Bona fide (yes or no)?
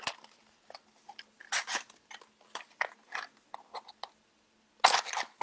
yes